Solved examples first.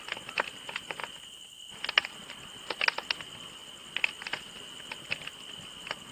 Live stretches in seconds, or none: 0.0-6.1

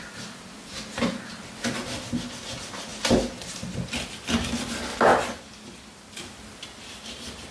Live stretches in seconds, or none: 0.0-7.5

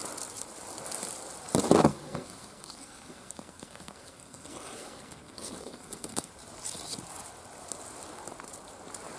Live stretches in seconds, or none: 0.0-1.9; 6.3-9.2

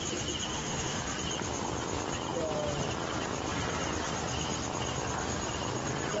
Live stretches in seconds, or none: 0.0-0.5; 1.0-6.2

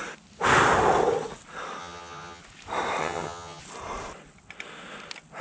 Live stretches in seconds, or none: 0.0-1.8; 2.4-3.0; 3.6-5.4

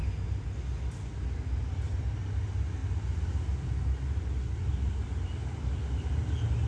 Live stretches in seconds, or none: 0.0-6.7